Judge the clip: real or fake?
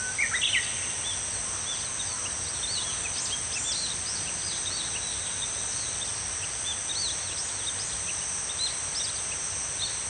real